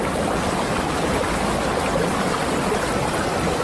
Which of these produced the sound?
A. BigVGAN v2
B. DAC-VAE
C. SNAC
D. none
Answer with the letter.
D